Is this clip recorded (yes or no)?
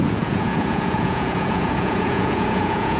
no